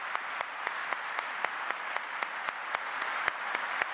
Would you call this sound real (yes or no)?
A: yes